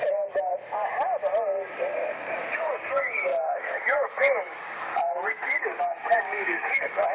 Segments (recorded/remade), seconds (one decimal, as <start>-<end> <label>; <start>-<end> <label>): 0.0-0.5 remade; 0.5-2.1 recorded; 2.1-7.1 remade